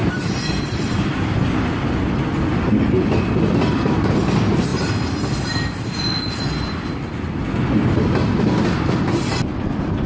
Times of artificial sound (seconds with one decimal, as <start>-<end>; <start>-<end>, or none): 0.0-1.8